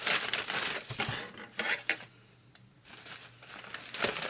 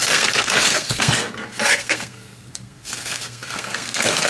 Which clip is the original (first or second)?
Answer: first